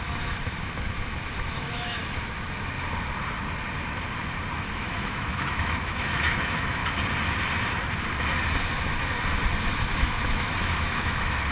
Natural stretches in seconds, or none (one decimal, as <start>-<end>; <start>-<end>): 2.0-4.8; 6.8-9.7